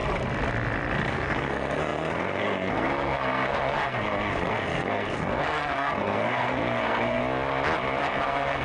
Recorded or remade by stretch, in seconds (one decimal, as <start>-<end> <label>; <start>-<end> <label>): 0.0-1.1 recorded; 1.1-7.2 remade; 7.2-8.0 recorded; 8.0-8.6 remade